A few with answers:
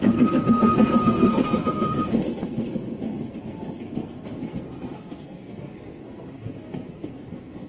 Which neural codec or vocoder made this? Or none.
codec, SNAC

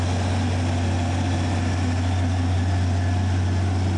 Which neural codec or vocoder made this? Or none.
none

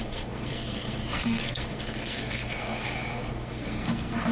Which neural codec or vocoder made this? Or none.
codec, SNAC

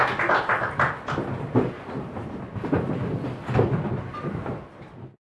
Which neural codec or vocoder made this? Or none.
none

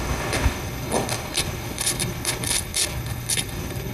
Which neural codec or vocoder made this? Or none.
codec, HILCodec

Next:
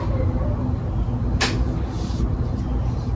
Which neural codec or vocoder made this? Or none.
none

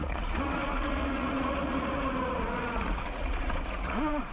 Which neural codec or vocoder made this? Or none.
vocoder, Vocos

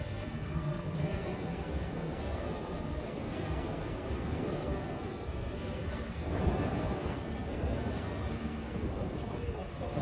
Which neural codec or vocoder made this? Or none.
codec, SNAC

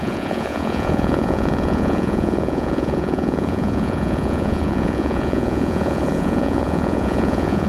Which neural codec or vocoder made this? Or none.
vocoder, Vocos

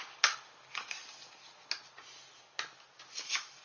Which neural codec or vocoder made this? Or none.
none